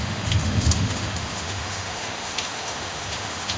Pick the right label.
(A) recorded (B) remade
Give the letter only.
B